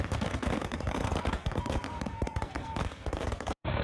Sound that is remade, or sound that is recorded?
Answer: remade